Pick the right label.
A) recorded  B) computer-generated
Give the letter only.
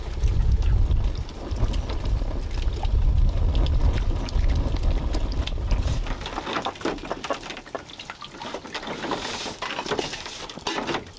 A